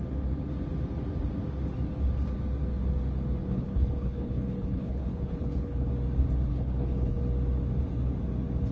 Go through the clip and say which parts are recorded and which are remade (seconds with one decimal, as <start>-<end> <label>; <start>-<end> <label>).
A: 0.0-3.4 recorded; 3.4-5.9 remade; 5.9-6.5 recorded; 6.5-7.2 remade; 7.2-8.7 recorded

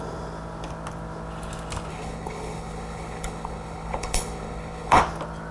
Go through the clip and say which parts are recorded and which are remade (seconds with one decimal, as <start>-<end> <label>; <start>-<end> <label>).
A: 0.0-1.9 recorded; 1.9-5.0 remade; 5.0-5.5 recorded

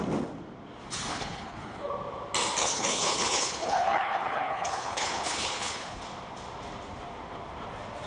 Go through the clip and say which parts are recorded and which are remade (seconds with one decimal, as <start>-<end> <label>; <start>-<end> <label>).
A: 0.0-1.1 recorded; 1.1-1.9 remade; 1.9-2.6 recorded; 2.6-6.0 remade; 6.0-8.1 recorded

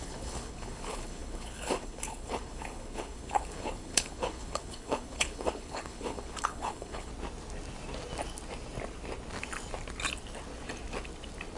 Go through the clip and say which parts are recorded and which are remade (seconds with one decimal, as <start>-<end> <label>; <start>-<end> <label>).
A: 0.0-7.1 remade; 7.1-11.6 recorded

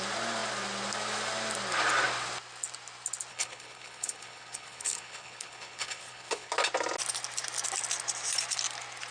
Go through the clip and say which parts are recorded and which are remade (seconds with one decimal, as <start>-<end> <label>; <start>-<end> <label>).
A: 0.0-3.3 recorded; 3.3-6.5 remade; 6.5-9.1 recorded

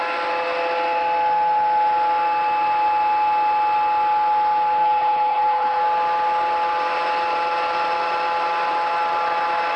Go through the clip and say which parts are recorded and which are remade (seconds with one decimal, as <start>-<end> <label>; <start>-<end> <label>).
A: 0.0-4.8 recorded; 4.8-5.8 remade; 5.8-9.8 recorded